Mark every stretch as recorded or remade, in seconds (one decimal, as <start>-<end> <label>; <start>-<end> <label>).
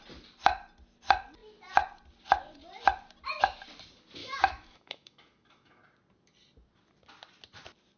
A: 0.0-4.2 recorded; 4.2-5.8 remade; 5.8-8.0 recorded